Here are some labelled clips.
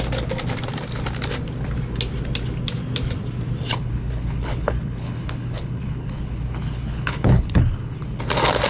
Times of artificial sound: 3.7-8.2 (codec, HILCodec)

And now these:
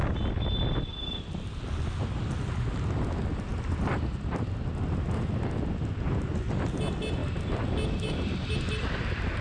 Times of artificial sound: none

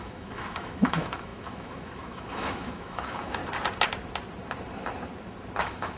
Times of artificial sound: 0.0-3.4 (autoencoder, DAC-VAE); 5.6-6.0